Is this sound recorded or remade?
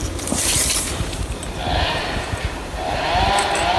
remade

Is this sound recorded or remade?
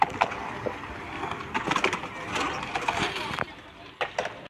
recorded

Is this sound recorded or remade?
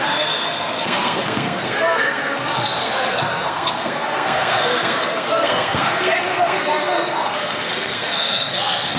remade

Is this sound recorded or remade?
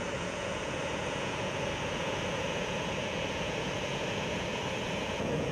remade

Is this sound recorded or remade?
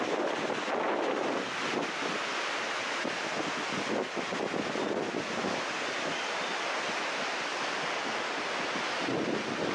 recorded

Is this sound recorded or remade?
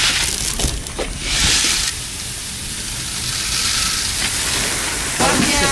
recorded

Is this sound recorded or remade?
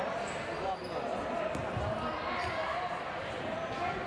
recorded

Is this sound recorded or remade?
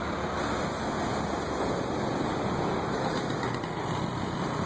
recorded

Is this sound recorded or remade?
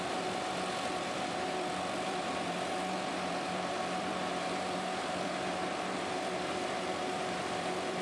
remade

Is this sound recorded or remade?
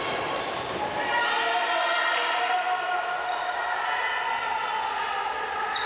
recorded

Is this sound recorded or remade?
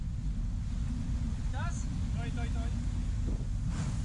recorded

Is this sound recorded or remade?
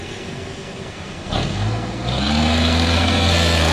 remade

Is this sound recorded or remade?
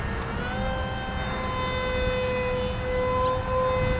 recorded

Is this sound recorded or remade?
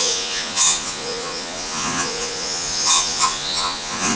remade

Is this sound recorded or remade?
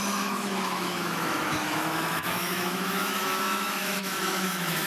remade